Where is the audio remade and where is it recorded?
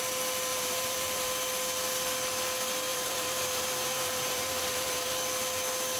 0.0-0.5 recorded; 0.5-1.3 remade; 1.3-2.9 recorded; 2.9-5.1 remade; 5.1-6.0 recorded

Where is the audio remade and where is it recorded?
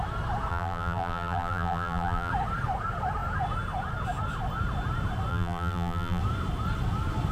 0.0-0.5 recorded; 0.5-2.3 remade; 2.3-5.3 recorded; 5.3-6.2 remade; 6.2-7.3 recorded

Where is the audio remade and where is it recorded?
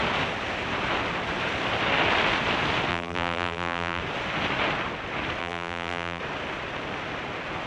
0.0-2.9 recorded; 2.9-4.0 remade; 4.0-5.4 recorded; 5.4-6.2 remade; 6.2-7.7 recorded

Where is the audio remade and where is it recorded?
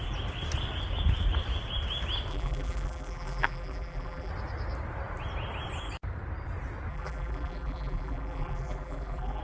0.0-2.3 recorded; 2.3-4.3 remade; 4.3-6.9 recorded; 6.9-9.4 remade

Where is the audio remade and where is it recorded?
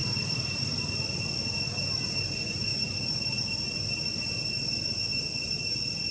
0.0-0.6 remade; 0.6-2.7 recorded; 2.7-3.3 remade; 3.3-6.1 recorded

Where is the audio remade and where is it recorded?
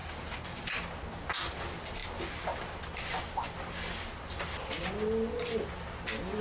0.0-0.6 remade; 0.6-6.4 recorded